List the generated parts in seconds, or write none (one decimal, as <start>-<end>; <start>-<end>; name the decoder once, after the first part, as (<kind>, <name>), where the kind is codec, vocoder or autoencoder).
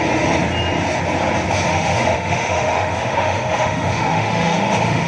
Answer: 1.7-5.1 (autoencoder, DAC-VAE)